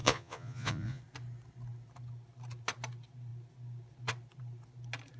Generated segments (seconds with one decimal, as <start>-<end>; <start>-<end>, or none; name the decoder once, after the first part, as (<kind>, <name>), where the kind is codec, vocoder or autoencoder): 0.0-1.0 (vocoder, Vocos)